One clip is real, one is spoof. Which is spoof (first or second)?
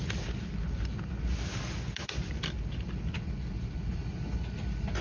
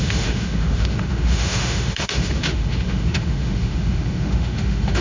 second